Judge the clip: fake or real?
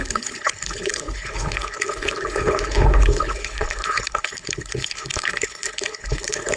fake